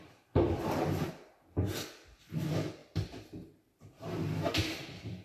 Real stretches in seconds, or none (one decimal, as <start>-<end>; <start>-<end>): 0.0-5.2